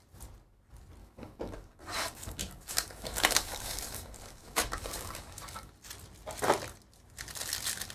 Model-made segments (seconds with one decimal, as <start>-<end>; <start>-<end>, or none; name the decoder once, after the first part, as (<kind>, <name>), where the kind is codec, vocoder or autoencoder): 1.0-5.7 (codec, DAC)